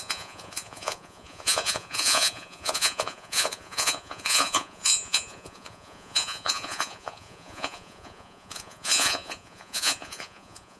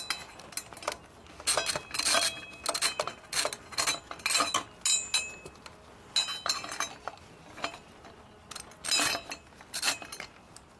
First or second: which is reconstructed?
first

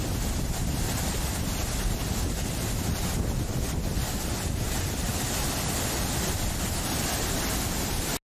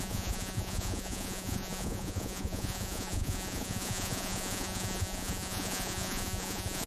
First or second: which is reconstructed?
second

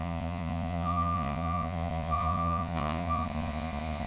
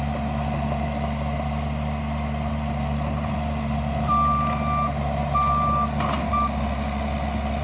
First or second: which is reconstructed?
first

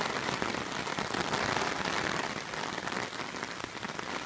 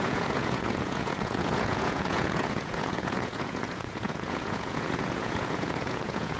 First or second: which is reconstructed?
second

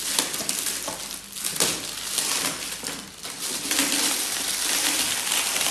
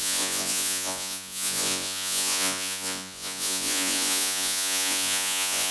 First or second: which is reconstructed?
second